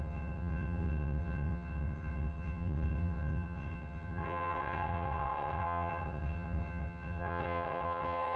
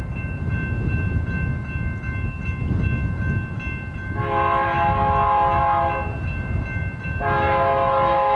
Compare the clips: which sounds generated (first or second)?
first